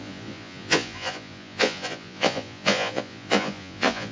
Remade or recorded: remade